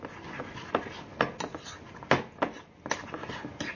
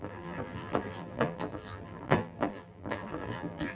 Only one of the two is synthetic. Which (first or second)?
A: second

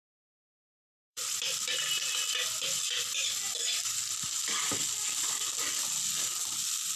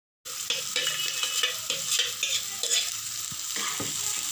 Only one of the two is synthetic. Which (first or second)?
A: first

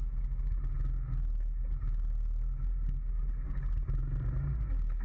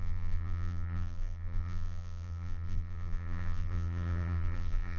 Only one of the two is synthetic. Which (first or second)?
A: second